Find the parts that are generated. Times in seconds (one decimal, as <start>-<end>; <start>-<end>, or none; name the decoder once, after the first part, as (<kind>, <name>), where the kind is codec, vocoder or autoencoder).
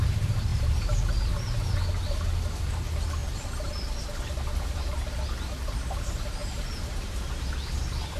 6.4-7.1 (vocoder, BigVGAN v2)